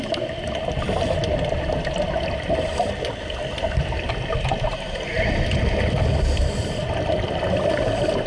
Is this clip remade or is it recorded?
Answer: recorded